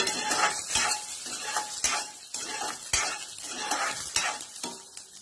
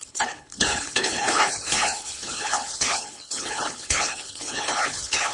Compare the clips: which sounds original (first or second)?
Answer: first